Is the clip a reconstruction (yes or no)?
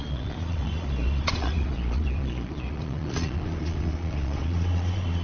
yes